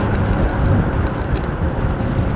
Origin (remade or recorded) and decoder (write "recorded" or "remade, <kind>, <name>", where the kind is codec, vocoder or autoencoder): recorded